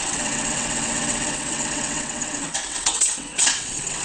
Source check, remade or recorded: remade